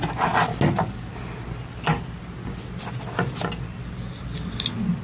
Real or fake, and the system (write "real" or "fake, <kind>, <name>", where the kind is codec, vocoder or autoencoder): real